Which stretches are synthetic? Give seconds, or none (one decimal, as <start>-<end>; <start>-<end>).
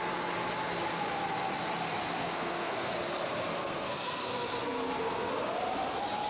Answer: 2.2-2.9; 3.5-5.3